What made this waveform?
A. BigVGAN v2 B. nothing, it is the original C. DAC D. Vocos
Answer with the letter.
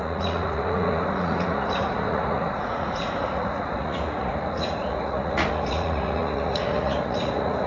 D